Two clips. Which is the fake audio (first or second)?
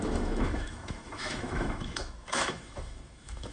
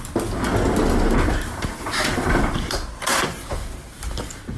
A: first